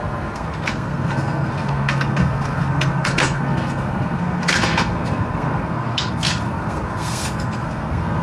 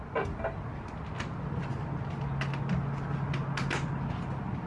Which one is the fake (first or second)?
first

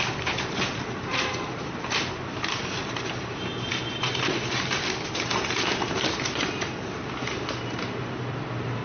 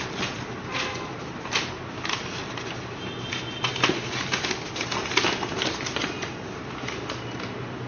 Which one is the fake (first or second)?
first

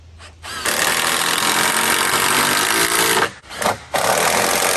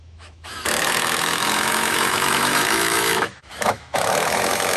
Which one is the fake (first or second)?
second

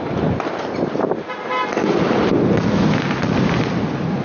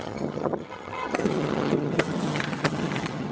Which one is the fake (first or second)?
second